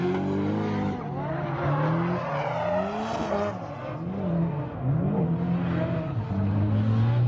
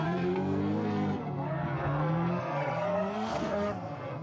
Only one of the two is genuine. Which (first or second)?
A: first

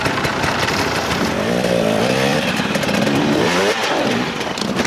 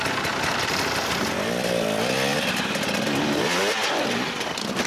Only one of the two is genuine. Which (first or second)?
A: second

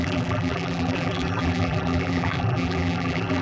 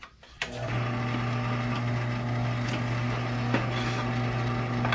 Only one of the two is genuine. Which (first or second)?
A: second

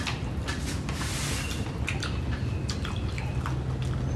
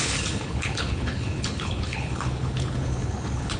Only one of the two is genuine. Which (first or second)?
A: first